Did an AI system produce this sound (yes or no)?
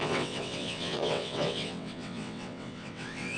yes